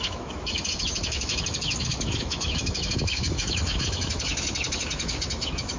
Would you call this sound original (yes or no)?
no